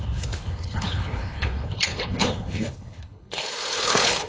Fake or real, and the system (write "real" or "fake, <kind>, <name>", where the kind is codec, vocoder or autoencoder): fake, codec, HILCodec